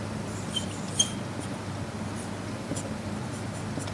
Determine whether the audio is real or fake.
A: real